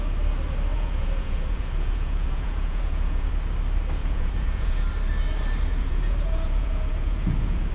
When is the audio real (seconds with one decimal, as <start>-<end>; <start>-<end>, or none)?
0.0-0.7; 3.3-4.0; 4.8-5.7